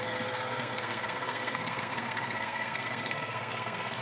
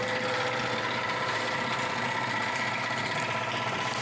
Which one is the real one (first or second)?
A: second